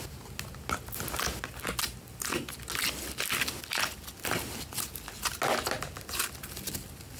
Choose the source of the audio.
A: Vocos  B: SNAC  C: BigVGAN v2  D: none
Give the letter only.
D